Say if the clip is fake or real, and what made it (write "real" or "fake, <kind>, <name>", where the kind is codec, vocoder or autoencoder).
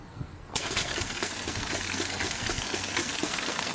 fake, codec, SNAC